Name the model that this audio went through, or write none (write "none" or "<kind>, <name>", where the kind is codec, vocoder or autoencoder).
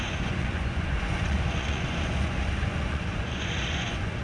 vocoder, Vocos